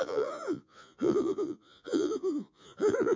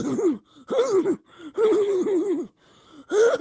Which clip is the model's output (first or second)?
first